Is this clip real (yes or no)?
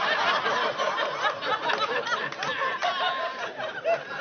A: yes